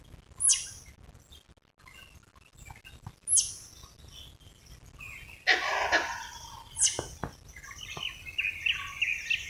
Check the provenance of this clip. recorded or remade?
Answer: recorded